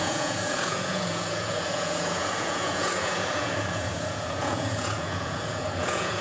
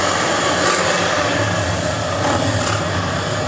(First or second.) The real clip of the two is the second